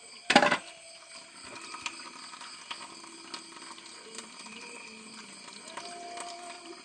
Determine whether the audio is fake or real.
real